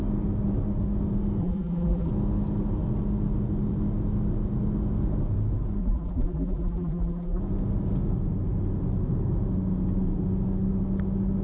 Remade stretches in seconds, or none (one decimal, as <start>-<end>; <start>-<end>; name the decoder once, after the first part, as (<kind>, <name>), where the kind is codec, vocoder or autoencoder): 1.4-2.1 (vocoder, BigVGAN v2); 5.8-7.4